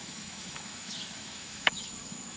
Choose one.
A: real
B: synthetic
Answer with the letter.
B